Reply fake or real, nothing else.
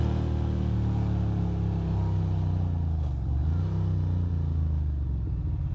real